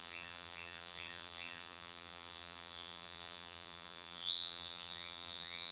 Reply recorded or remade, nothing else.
remade